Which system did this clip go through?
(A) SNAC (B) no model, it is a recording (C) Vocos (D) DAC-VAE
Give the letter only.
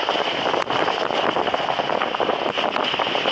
B